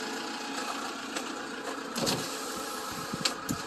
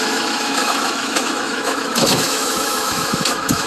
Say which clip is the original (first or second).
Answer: first